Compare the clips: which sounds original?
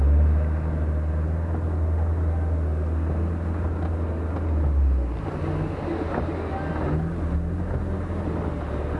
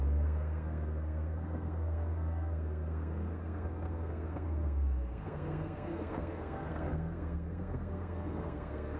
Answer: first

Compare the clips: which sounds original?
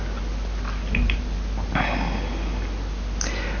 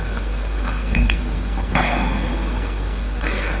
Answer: first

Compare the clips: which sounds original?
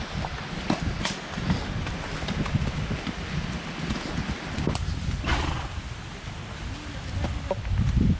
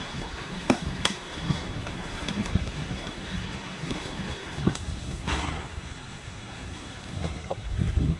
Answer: first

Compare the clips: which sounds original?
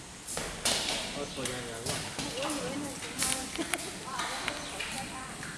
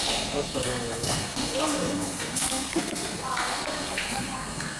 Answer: first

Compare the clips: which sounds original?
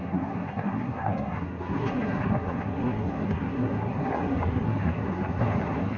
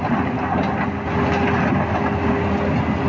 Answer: second